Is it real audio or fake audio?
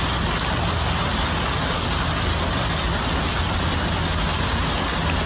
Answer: real